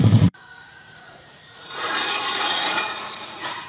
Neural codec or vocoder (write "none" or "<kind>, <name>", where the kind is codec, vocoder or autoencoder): vocoder, Vocos